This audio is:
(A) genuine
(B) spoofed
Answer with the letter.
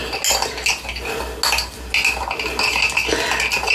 A